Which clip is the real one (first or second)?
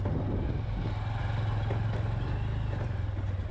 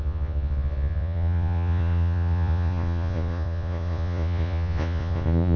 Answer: first